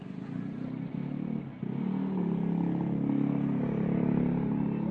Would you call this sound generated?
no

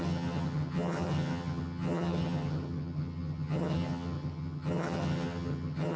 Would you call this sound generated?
yes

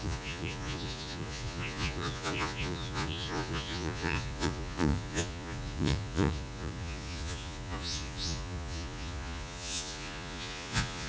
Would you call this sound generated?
yes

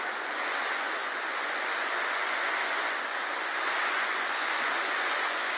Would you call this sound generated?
yes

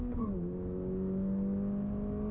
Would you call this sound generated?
no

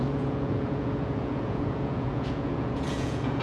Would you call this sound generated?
yes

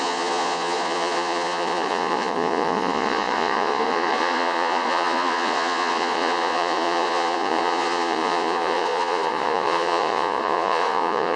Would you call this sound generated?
yes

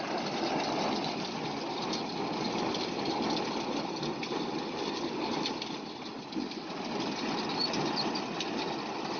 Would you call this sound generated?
no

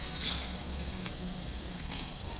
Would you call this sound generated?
yes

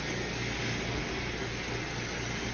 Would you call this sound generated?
no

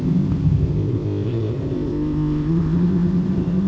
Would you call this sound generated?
yes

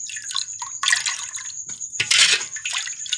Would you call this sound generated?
no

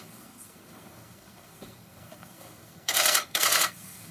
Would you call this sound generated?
yes